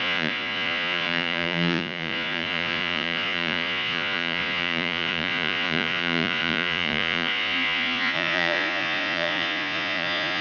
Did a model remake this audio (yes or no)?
yes